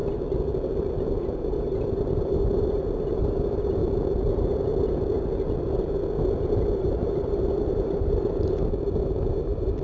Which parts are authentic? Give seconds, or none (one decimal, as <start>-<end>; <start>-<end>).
0.0-0.8; 3.8-6.8